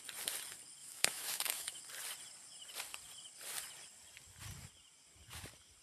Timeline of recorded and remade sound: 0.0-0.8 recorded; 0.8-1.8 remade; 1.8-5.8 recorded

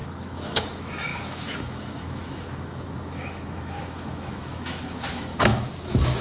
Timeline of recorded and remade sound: 0.0-6.2 remade

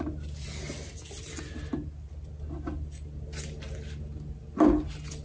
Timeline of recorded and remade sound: 0.0-5.2 recorded

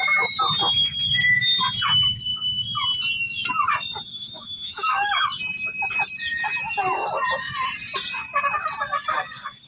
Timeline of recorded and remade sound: 0.0-4.1 recorded; 4.1-5.4 remade; 5.4-9.7 recorded

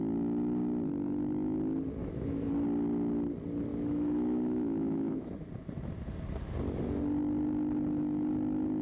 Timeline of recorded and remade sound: 0.0-2.0 recorded; 2.0-2.5 remade; 2.5-3.7 recorded; 3.7-5.5 remade; 5.5-8.8 recorded

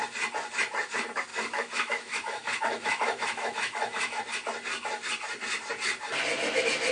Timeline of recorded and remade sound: 0.0-1.3 recorded; 1.3-4.2 remade; 4.2-6.9 recorded

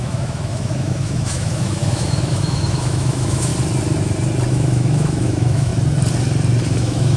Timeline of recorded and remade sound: 0.0-3.5 remade; 3.5-4.5 recorded; 4.5-5.7 remade; 5.7-6.6 recorded; 6.6-7.2 remade